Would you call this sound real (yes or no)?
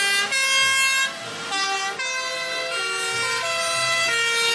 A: yes